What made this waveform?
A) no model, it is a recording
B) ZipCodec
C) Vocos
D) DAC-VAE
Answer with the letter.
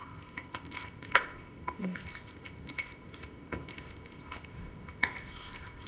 B